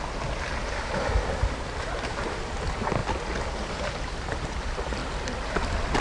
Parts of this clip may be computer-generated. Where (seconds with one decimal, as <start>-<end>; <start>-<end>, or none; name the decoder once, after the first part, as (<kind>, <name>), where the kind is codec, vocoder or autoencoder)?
none